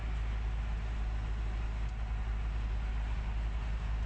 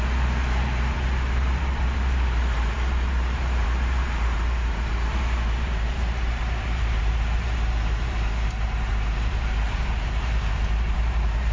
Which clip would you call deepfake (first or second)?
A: second